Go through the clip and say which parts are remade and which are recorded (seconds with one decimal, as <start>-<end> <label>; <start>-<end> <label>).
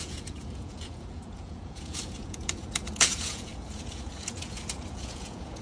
0.0-5.6 remade